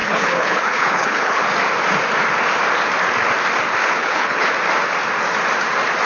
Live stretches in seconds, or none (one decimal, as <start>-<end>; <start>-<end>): 1.4-3.8; 4.5-6.1